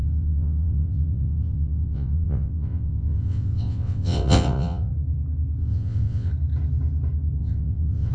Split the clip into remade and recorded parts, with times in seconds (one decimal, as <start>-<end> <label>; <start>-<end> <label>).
0.0-4.9 remade; 4.9-5.6 recorded; 5.6-6.3 remade; 6.3-7.4 recorded; 7.4-8.1 remade